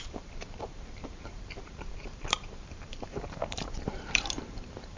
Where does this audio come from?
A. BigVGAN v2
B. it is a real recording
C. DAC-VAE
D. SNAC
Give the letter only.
A